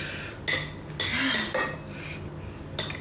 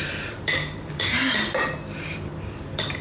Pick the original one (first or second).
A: first